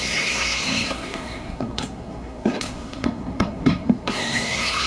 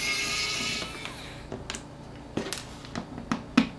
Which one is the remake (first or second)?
first